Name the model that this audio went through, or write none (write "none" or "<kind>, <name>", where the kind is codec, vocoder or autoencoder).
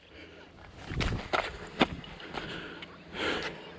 none